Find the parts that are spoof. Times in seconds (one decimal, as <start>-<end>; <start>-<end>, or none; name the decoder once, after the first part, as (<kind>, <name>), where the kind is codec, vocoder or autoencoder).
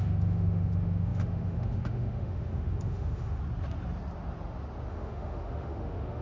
0.0-3.4 (autoencoder, DAC-VAE); 4.9-6.2